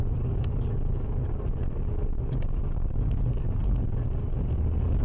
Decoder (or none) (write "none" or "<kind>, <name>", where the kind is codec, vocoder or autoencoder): none